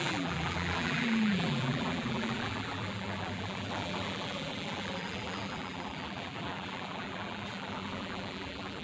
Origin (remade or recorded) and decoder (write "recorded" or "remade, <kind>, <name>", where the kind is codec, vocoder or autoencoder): remade, vocoder, BigVGAN v2